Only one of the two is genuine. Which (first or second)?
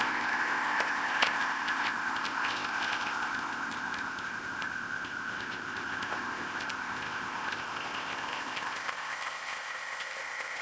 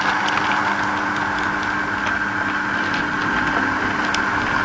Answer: second